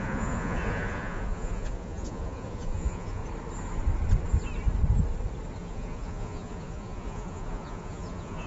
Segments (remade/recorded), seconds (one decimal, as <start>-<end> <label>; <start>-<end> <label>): 0.0-3.2 remade; 3.2-5.6 recorded; 5.6-8.5 remade